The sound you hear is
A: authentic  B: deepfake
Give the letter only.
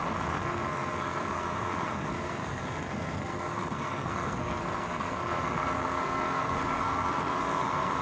B